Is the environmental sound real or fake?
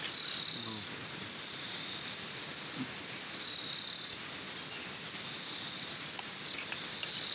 real